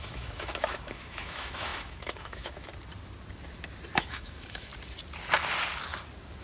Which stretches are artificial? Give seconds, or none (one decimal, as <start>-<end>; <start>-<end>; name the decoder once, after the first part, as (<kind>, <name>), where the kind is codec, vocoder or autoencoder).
0.0-2.7 (autoencoder, DAC-VAE); 4.0-4.7